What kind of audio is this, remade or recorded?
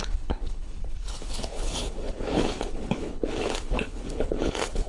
remade